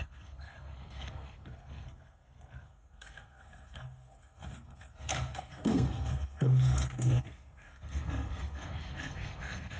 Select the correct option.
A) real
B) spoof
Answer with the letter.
B